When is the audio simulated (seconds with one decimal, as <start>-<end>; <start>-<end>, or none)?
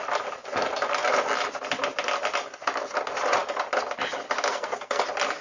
4.5-5.0